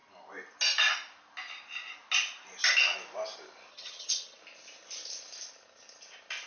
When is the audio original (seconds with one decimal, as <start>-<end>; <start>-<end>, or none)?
0.0-3.7; 4.4-6.5

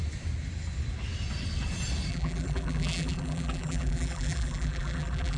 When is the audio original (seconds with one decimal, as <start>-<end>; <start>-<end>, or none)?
0.0-2.1

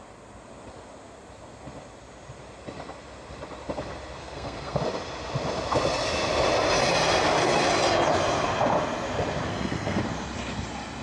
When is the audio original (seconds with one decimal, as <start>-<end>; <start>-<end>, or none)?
0.0-4.2; 4.8-9.5; 10.0-11.0

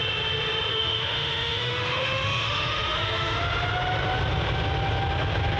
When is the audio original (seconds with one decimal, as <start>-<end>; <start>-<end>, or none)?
0.0-0.7; 3.4-5.6

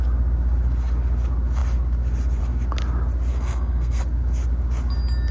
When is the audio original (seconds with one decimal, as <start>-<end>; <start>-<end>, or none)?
0.0-3.3; 4.0-5.3